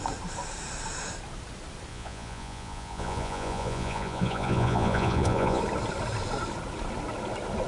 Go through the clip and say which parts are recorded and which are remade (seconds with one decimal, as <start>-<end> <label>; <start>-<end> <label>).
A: 0.0-1.9 recorded; 1.9-5.6 remade; 5.6-7.7 recorded